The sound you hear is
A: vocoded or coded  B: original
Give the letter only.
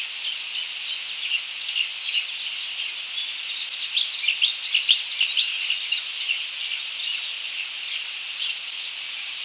B